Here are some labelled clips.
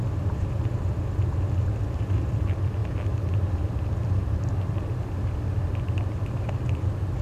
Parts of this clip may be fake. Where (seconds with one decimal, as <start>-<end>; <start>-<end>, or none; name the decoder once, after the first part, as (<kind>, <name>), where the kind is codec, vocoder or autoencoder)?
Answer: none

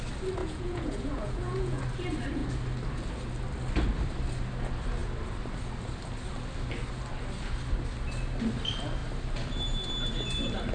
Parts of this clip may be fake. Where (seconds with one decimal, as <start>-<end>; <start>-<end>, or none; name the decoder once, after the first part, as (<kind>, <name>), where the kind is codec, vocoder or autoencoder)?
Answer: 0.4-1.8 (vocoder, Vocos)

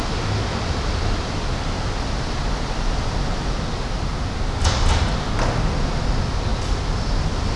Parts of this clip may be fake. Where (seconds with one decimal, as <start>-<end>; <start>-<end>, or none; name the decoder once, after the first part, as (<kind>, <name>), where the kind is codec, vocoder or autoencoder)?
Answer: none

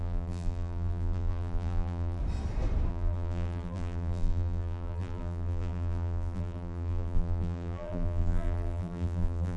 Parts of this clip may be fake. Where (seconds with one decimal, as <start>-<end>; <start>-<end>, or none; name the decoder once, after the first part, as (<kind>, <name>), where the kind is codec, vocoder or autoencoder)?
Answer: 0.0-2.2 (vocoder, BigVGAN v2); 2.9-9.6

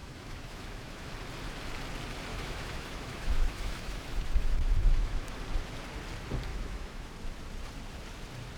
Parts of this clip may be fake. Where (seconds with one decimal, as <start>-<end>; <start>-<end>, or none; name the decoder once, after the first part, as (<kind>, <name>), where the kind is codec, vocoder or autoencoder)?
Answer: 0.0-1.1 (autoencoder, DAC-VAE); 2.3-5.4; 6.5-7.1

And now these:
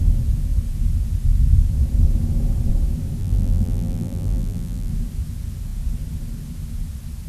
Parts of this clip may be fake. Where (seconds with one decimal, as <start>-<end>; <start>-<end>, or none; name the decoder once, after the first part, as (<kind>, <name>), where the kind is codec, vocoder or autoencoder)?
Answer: 3.2-4.9 (vocoder, BigVGAN v2)

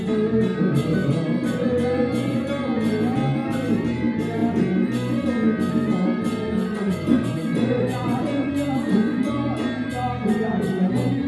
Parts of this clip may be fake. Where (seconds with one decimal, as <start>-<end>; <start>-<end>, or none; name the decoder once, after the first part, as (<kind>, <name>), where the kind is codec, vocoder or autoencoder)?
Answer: 6.7-8.5 (vocoder, Vocos)